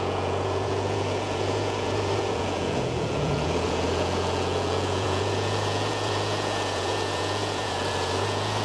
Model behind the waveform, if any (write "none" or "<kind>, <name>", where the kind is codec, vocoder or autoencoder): vocoder, Vocos